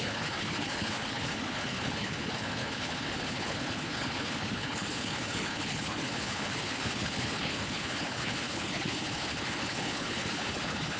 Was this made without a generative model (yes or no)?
no